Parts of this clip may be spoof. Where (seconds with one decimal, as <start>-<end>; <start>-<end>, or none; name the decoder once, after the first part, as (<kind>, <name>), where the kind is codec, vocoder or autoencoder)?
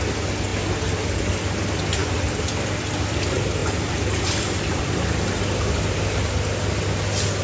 2.0-2.9 (vocoder, BigVGAN v2); 3.6-5.3